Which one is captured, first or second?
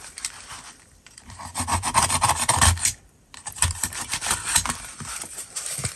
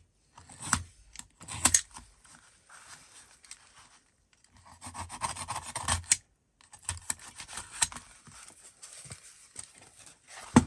second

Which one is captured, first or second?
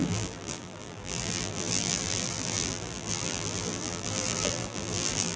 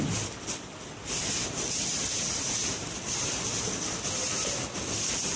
second